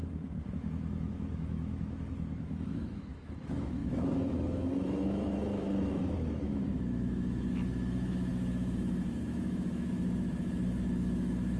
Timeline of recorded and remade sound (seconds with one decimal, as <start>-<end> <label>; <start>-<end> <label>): 0.0-0.5 recorded; 0.5-11.6 remade